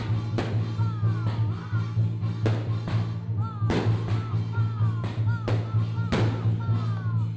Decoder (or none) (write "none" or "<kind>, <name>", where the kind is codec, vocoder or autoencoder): none